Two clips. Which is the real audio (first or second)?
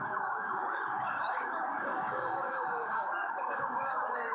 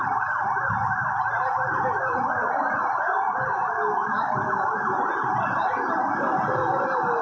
second